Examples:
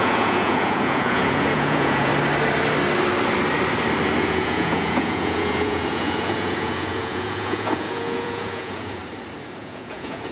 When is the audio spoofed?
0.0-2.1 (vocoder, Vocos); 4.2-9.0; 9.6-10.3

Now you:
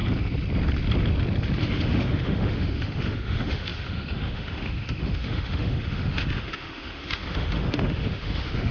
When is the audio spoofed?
1.6-8.7 (autoencoder, DAC-VAE)

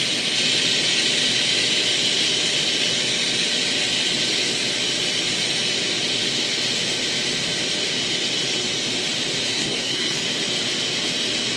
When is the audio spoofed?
9.5-10.2 (codec, SNAC)

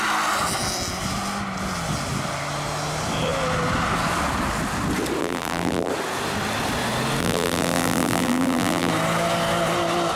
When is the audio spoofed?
5.2-5.9 (vocoder, BigVGAN v2); 7.2-8.9

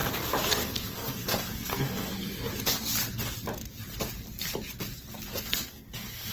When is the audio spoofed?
0.5-2.1 (codec, SNAC); 5.4-6.3

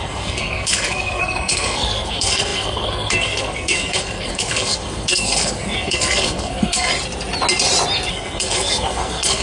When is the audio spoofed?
0.0-6.9 (codec, SNAC); 8.1-9.4

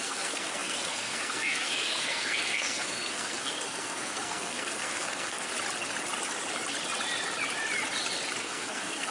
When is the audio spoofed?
0.0-5.5 (codec, SNAC); 8.4-9.1